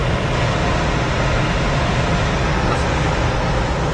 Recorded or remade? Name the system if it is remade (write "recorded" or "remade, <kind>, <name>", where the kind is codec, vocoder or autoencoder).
recorded